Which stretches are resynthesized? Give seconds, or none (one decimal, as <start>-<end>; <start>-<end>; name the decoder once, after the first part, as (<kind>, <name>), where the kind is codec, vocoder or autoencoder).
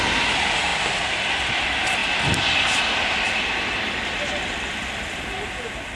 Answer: 0.7-1.6 (vocoder, BigVGAN v2); 2.0-5.0